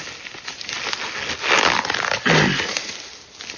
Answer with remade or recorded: recorded